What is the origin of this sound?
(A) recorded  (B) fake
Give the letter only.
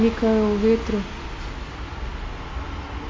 A